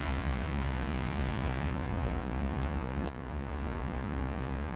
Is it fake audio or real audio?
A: fake